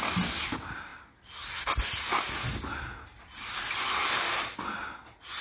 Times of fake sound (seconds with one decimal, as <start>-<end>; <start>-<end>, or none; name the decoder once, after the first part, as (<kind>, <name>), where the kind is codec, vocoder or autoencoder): none